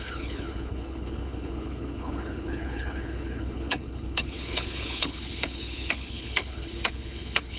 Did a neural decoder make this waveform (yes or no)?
yes